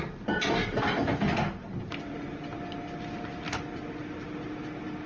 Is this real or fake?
real